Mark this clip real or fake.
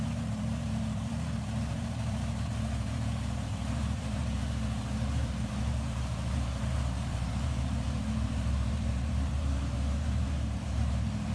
fake